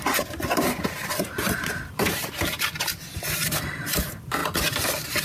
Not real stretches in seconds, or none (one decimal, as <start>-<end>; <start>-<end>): 1.2-2.9; 3.5-4.4